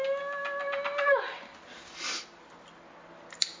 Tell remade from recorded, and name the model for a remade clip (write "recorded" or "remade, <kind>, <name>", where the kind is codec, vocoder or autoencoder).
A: recorded